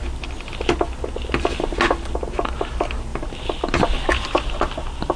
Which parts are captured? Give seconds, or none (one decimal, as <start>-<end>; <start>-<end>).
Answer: 0.0-5.2